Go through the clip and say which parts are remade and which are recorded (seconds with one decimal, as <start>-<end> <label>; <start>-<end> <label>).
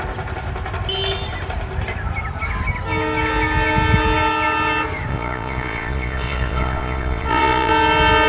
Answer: 0.0-5.1 recorded; 5.1-7.7 remade; 7.7-8.3 recorded